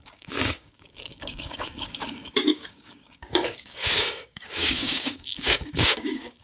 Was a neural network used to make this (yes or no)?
yes